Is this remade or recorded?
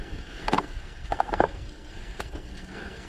remade